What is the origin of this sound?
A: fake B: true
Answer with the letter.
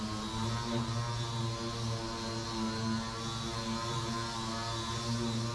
B